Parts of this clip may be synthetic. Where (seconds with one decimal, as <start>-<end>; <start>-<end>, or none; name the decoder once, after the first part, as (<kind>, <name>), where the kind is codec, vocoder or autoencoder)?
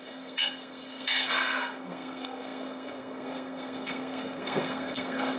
0.0-5.4 (codec, SNAC)